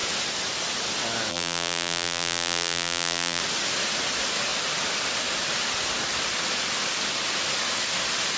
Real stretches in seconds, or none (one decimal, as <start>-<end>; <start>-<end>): 0.0-1.3; 3.4-8.4